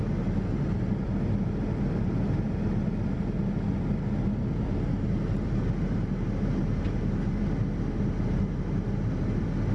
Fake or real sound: real